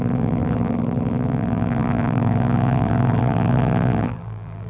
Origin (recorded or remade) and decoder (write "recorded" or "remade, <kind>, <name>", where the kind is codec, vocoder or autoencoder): remade, vocoder, BigVGAN v2